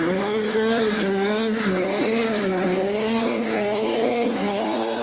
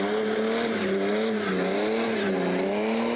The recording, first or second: second